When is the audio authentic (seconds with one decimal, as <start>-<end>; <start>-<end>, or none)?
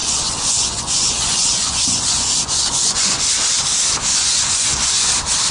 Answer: 3.3-4.1; 5.1-5.5